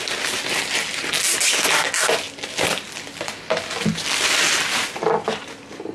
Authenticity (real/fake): real